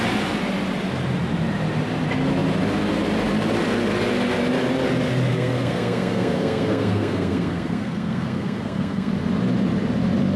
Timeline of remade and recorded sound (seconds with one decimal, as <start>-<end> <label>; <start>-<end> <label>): 0.0-5.3 recorded; 5.3-9.1 remade; 9.1-10.4 recorded